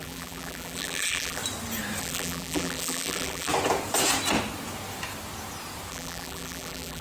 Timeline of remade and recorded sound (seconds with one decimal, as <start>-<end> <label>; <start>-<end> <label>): 0.0-1.4 remade; 1.4-2.0 recorded; 2.0-3.5 remade; 3.5-5.9 recorded; 5.9-7.0 remade